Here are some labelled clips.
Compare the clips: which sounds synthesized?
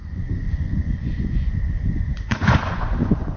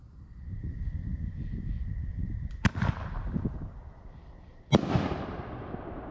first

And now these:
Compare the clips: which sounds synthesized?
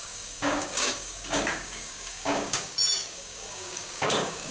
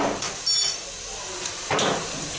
first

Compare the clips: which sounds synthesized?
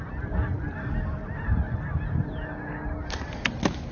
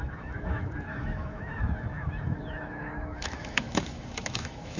second